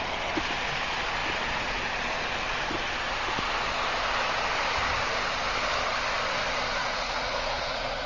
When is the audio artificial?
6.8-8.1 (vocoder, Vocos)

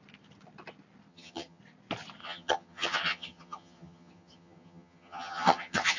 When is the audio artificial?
1.1-1.6 (vocoder, HiFi-GAN); 2.2-6.0

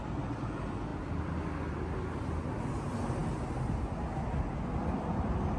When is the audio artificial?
none

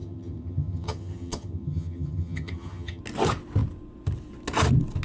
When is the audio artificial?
0.0-3.0 (vocoder, HiFi-GAN)

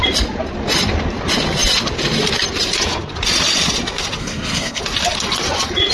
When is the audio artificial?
4.2-4.8 (codec, SNAC)

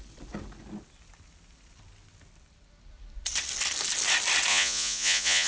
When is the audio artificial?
4.5-5.5 (vocoder, Vocos)